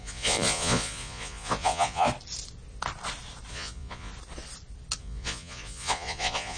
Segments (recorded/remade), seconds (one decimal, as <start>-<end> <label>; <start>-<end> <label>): 0.0-2.1 remade; 2.1-3.5 recorded; 3.5-4.1 remade; 4.1-5.0 recorded; 5.0-6.6 remade